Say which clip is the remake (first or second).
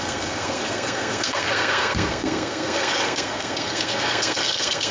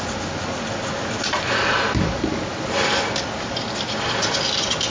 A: first